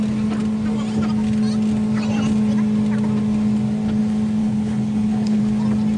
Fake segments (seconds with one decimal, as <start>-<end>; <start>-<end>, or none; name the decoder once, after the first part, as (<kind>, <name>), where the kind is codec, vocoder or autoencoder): 4.4-5.4 (codec, HILCodec)